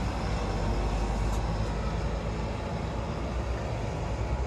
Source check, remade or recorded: recorded